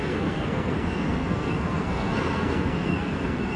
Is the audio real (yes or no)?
no